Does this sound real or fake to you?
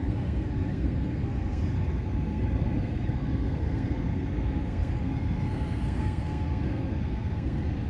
fake